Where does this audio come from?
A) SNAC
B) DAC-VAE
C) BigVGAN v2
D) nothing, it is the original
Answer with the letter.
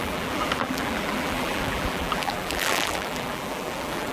C